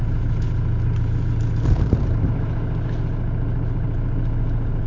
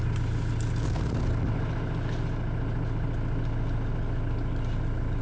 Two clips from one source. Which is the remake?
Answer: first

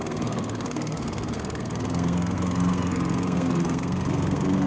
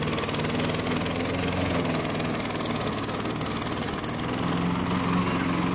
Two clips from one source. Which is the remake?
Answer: first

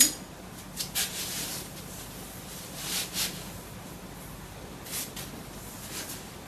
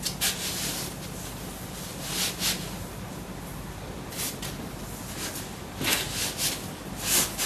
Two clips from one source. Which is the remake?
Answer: first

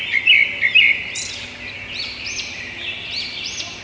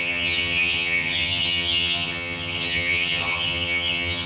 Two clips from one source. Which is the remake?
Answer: second